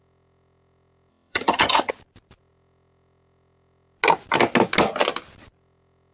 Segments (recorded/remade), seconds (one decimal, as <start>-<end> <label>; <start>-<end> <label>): 0.0-1.1 recorded; 1.1-1.9 remade; 1.9-6.1 recorded